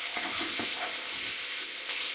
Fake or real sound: fake